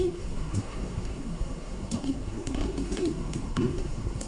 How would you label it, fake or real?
fake